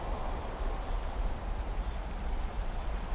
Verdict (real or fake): fake